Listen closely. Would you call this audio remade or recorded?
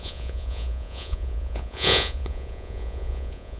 remade